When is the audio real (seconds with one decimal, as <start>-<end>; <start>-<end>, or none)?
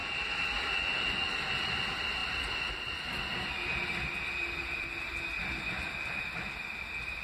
0.0-7.2